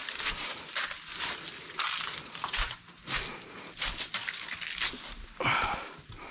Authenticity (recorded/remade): recorded